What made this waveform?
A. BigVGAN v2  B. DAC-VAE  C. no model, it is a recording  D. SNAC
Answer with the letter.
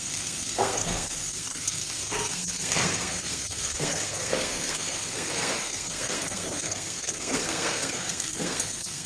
D